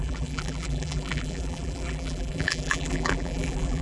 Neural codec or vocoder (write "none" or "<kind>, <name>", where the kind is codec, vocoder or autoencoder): vocoder, BigVGAN v2